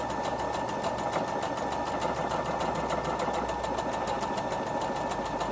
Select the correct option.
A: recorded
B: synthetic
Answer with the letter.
A